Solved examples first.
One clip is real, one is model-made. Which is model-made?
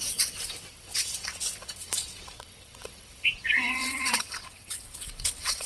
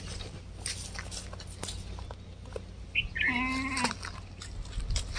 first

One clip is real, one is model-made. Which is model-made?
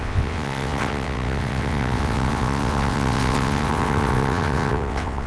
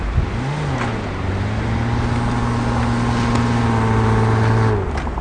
first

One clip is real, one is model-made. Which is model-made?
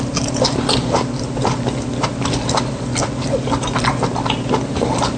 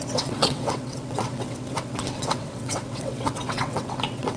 second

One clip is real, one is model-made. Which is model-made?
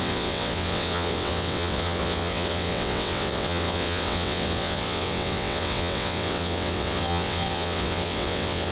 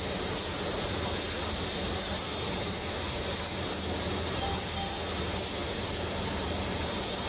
first